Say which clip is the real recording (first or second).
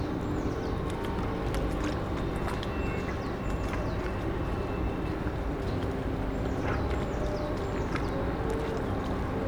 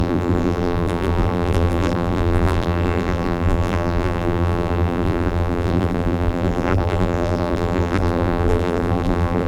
first